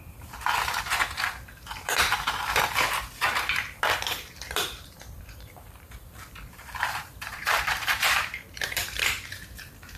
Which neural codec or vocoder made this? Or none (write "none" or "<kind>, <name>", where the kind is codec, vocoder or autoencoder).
vocoder, BigVGAN v2